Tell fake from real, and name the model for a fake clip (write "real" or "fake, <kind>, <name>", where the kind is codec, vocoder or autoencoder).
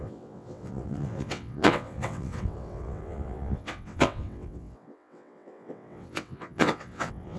fake, vocoder, WaveNeXt